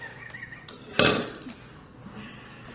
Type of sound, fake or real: real